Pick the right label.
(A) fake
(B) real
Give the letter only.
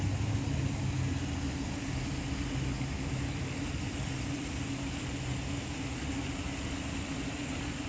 B